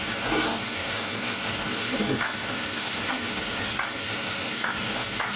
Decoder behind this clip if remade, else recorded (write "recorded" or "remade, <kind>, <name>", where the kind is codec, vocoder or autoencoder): remade, codec, SNAC